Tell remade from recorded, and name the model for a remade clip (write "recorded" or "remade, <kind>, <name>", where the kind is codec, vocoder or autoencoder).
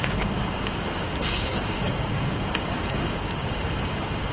remade, codec, DAC